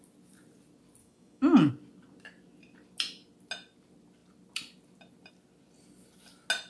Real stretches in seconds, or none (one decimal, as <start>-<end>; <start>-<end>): 0.0-1.0; 1.7-6.7